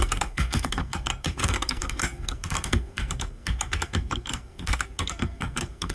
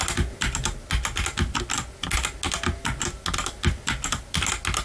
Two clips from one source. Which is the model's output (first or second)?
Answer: first